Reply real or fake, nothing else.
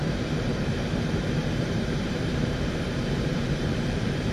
fake